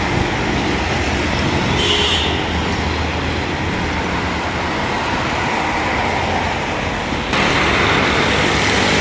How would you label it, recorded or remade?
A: recorded